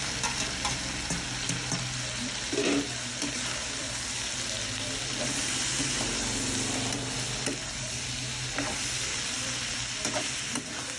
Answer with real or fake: real